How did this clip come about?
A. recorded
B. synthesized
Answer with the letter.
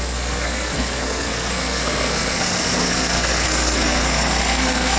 B